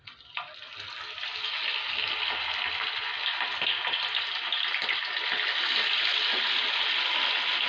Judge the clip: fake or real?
real